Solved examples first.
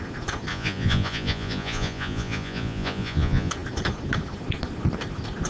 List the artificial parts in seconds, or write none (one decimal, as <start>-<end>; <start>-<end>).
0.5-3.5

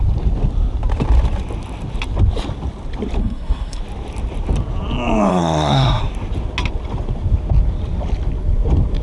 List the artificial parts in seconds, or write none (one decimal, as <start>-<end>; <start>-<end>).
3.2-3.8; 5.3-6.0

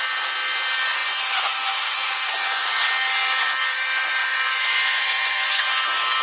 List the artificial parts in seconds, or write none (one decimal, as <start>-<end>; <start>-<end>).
1.0-2.7; 4.2-5.7

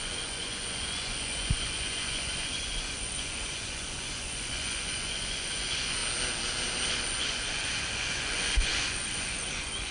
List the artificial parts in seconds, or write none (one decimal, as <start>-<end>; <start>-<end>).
0.0-6.0; 6.9-9.9